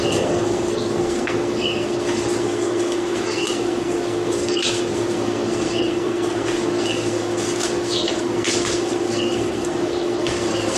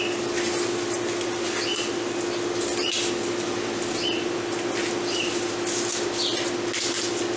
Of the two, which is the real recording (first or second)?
second